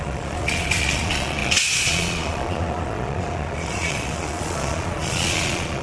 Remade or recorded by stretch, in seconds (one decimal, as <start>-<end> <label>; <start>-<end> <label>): 0.0-5.8 remade